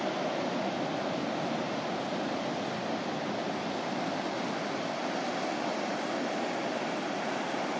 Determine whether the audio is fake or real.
real